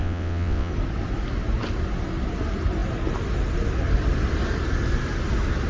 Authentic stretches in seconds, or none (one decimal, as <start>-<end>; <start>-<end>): 0.7-5.7